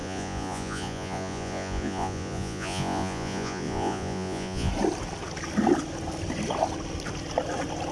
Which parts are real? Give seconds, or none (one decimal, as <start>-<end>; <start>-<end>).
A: 4.7-7.9

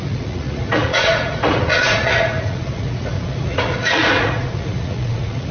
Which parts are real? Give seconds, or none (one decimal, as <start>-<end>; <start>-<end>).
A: none

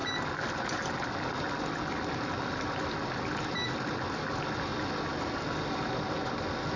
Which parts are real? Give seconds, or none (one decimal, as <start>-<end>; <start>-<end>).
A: 0.0-6.8

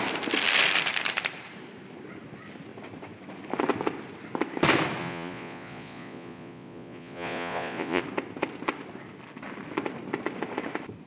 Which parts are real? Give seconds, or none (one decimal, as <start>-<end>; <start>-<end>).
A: 0.0-5.0; 8.0-11.1